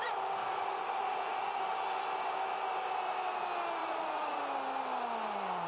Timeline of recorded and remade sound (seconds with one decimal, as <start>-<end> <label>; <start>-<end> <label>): 0.0-0.4 recorded; 0.4-1.6 remade; 1.6-3.8 recorded; 3.8-4.4 remade; 4.4-5.7 recorded